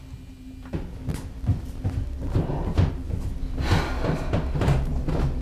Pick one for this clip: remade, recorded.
recorded